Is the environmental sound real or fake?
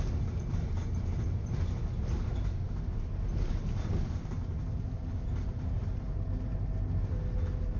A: real